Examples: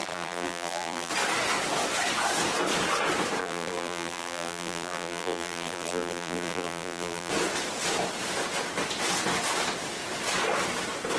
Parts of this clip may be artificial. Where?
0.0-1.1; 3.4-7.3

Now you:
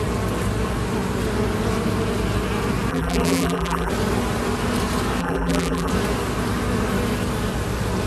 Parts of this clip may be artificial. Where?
2.9-3.9; 5.2-5.9